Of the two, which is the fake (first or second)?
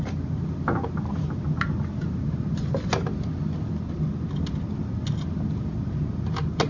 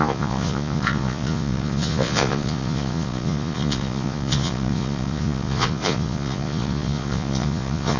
second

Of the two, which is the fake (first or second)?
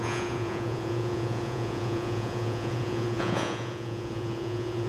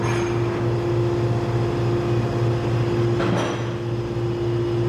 first